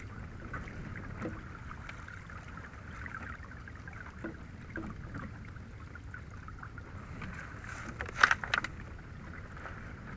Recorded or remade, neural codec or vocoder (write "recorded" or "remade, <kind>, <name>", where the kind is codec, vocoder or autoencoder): recorded